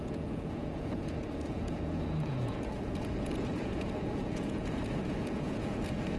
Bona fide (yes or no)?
no